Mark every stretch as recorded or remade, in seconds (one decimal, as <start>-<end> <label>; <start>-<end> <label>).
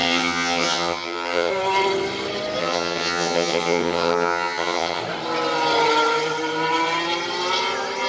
0.0-1.5 remade; 1.5-2.6 recorded; 2.6-5.0 remade; 5.0-8.1 recorded